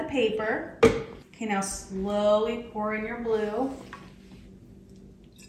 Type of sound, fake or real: real